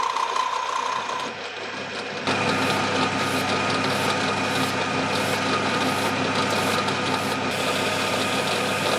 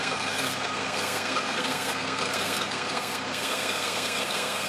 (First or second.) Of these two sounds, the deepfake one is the second